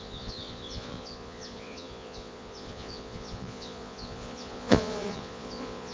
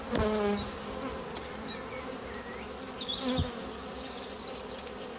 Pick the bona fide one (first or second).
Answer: second